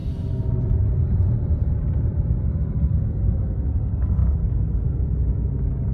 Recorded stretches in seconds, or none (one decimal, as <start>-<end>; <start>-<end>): 2.4-5.9